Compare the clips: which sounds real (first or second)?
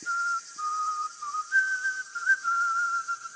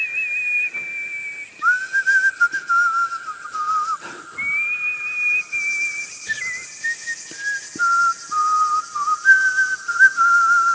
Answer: second